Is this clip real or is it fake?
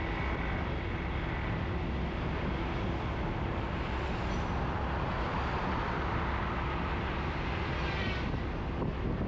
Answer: real